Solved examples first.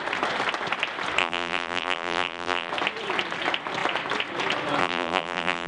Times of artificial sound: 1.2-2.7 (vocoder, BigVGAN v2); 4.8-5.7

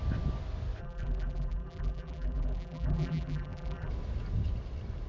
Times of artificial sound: 0.8-3.9 (vocoder, BigVGAN v2)

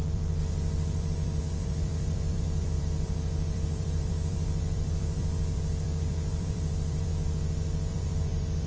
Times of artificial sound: 0.0-7.1 (vocoder, BigVGAN v2); 7.9-8.7

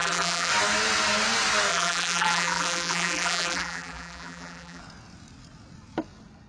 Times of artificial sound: 0.0-0.5 (vocoder, BigVGAN v2); 1.7-4.8

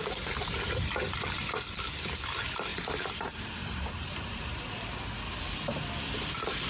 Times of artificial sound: 2.7-4.9 (vocoder, BigVGAN v2)

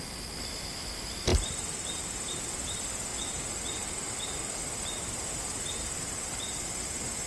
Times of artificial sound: 1.3-2.4 (vocoder, BigVGAN v2); 3.1-4.6

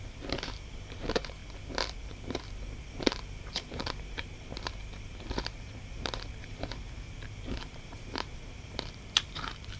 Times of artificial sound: 0.0-9.8 (vocoder, BigVGAN v2)

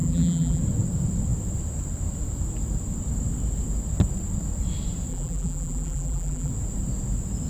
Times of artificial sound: 0.0-0.6 (vocoder, BigVGAN v2); 5.1-6.5